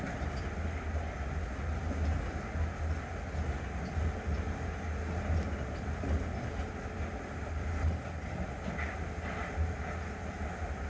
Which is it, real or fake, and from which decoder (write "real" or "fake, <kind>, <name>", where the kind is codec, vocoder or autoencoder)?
real